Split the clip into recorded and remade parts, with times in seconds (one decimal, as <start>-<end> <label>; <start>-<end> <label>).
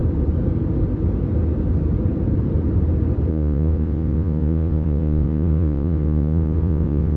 0.0-3.3 recorded; 3.3-7.2 remade